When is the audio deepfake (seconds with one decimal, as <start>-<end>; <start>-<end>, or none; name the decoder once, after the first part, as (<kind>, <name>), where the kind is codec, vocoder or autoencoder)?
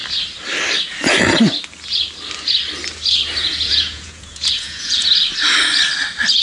3.4-5.1 (vocoder, Vocos)